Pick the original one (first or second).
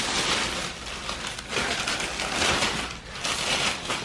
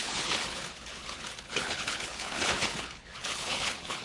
first